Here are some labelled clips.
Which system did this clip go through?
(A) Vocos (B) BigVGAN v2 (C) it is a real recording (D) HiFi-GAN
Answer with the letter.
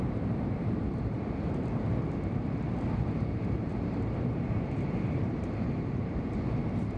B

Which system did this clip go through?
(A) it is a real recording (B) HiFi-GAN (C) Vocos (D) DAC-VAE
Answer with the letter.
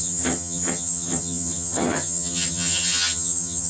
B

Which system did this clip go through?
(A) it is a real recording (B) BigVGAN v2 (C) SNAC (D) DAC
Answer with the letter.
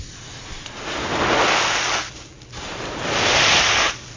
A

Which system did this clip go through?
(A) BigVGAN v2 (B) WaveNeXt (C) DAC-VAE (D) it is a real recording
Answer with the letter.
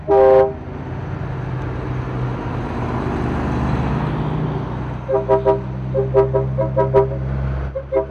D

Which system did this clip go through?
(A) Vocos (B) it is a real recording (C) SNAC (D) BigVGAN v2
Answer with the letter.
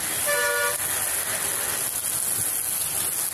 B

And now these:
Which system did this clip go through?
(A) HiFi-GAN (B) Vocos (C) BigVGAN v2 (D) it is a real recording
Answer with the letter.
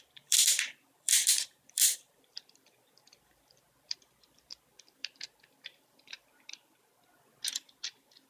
C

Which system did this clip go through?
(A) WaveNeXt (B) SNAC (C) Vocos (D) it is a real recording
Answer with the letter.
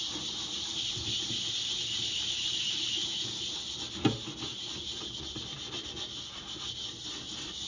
D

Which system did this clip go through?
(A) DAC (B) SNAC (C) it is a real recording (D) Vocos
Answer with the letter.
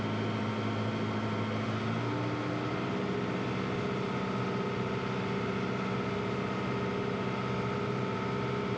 C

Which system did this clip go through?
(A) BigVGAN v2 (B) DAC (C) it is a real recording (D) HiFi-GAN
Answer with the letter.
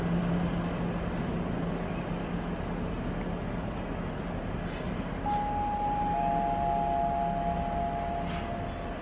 C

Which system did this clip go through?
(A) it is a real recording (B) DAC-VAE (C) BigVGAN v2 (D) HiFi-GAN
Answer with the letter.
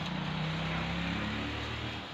A